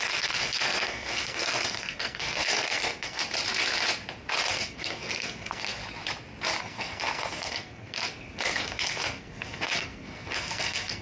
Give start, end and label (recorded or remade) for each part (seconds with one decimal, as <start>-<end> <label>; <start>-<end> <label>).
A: 0.0-3.2 remade; 3.2-4.5 recorded; 4.5-5.8 remade; 5.8-6.6 recorded; 6.6-11.0 remade